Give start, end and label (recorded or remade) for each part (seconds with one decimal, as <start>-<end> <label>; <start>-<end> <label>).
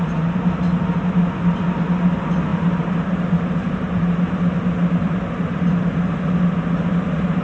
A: 0.0-2.5 recorded; 2.5-4.2 remade; 4.2-7.4 recorded